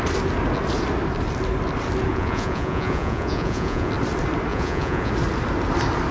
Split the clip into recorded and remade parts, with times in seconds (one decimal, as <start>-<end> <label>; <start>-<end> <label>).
0.0-2.1 recorded; 2.1-3.9 remade; 3.9-4.5 recorded; 4.5-5.1 remade; 5.1-6.1 recorded